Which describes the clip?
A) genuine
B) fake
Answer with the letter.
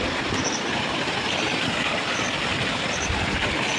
B